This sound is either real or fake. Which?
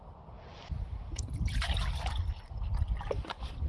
real